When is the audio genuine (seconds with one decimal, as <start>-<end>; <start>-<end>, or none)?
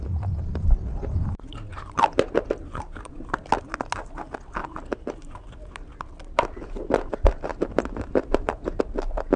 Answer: 0.0-1.7; 3.1-4.6; 6.7-7.5; 8.8-9.4